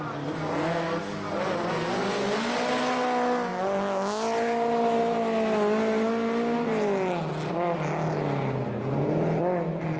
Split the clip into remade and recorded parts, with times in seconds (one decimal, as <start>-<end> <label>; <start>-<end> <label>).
0.0-10.0 recorded